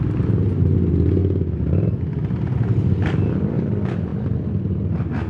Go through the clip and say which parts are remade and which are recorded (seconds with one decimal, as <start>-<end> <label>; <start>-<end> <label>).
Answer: 0.0-5.3 recorded